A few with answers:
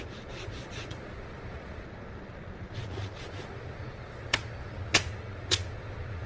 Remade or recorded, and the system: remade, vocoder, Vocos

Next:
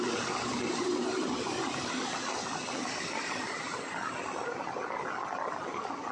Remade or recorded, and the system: remade, vocoder, BigVGAN v2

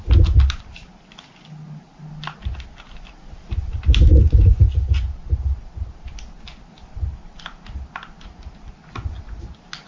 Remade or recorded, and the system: recorded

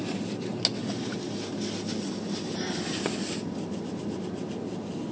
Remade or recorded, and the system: recorded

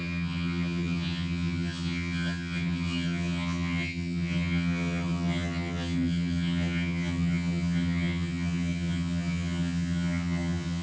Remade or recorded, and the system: remade, vocoder, HiFi-GAN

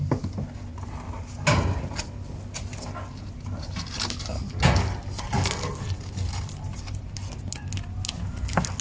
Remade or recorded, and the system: recorded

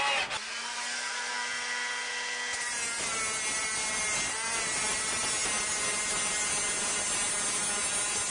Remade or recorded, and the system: recorded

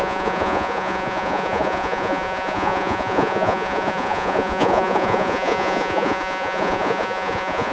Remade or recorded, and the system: remade, vocoder, Vocos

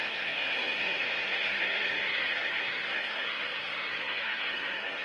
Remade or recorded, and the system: remade, codec, SNAC